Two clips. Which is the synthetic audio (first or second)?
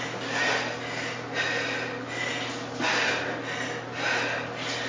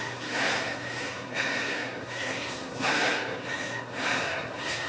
second